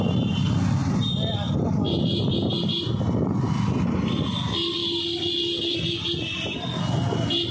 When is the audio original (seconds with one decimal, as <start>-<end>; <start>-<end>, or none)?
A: 0.0-7.5